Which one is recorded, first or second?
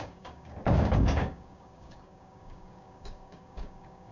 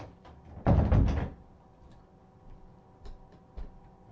second